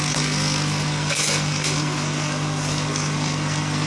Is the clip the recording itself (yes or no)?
no